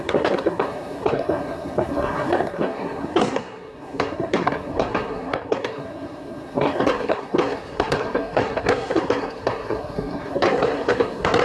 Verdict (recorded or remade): remade